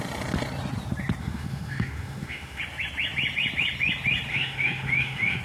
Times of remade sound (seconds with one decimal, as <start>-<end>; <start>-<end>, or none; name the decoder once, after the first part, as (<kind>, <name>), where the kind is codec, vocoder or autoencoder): 1.2-2.6 (autoencoder, DAC-VAE); 4.3-5.4